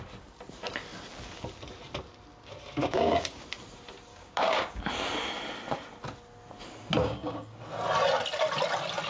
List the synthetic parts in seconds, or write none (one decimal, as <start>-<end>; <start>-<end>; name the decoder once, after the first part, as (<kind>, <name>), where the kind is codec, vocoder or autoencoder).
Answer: 2.8-3.4 (codec, DAC); 4.1-4.8; 7.0-7.6